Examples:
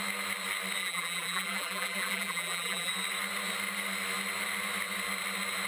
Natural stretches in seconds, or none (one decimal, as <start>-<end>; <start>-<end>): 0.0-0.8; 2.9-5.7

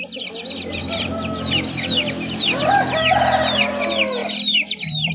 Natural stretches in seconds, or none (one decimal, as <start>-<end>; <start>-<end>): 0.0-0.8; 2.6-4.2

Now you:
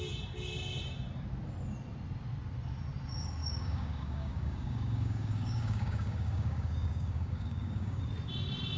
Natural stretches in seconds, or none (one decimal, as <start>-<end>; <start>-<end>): 0.0-3.4; 8.1-8.8

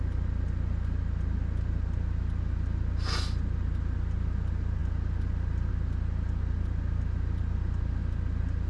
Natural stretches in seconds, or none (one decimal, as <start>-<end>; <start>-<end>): 0.0-8.7